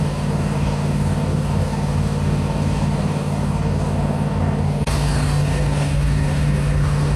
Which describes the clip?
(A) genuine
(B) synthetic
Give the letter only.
B